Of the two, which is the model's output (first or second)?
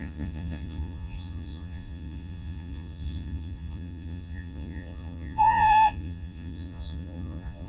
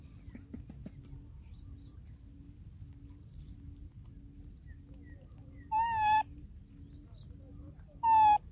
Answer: first